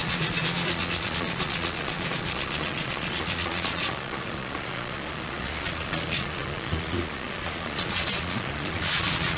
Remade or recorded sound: remade